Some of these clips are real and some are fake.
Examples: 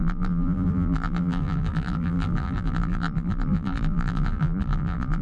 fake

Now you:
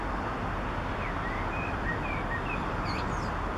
real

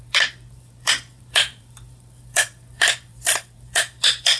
fake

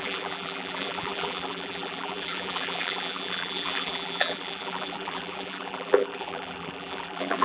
fake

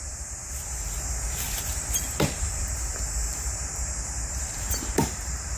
fake